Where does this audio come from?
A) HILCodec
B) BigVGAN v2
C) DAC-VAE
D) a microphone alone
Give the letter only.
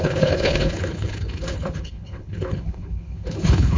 A